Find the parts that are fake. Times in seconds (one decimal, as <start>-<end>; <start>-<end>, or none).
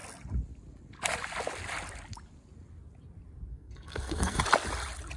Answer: 3.5-4.4